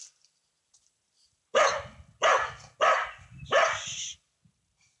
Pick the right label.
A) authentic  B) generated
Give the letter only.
A